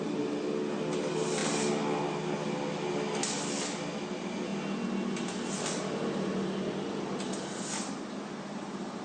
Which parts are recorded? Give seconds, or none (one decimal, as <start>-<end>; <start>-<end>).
0.0-9.0